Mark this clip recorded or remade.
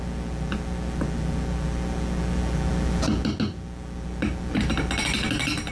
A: recorded